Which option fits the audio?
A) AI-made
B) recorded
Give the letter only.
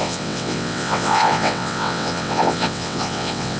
A